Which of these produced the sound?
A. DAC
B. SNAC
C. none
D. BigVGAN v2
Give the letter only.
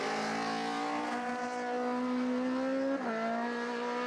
C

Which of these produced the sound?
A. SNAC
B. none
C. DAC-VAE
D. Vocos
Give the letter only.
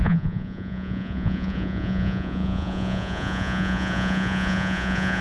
D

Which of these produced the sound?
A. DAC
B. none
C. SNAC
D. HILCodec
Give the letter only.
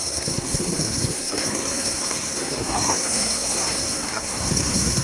C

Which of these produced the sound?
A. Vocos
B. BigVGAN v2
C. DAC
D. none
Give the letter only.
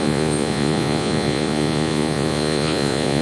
A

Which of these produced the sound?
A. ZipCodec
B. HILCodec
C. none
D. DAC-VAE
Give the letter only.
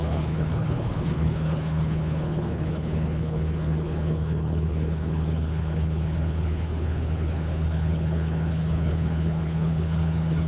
B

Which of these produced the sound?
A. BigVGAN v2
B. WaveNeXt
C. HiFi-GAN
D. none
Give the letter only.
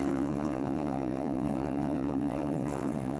B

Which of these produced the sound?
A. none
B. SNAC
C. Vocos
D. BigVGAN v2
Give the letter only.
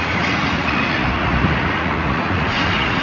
C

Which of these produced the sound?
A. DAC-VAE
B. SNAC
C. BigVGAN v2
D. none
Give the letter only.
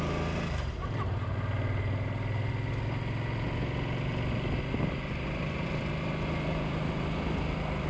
D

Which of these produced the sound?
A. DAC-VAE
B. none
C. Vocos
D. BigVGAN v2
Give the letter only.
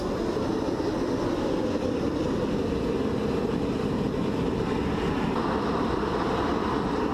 B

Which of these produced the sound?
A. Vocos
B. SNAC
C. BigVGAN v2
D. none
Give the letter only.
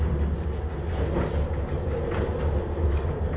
D